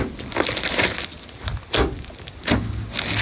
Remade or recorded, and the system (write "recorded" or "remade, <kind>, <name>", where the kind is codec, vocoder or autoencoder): recorded